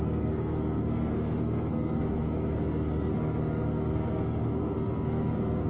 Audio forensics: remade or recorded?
remade